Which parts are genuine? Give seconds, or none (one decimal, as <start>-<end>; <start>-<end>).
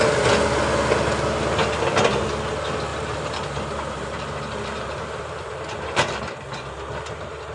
0.0-2.9; 6.2-7.5